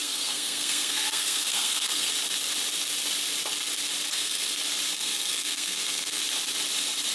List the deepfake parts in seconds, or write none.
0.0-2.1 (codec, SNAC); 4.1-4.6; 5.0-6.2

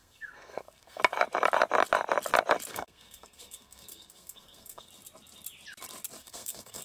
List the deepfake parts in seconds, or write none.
0.0-1.0 (codec, SNAC); 2.7-4.9; 6.2-6.8

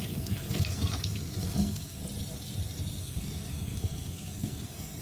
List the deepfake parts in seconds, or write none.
0.0-2.0 (codec, SNAC); 3.0-5.0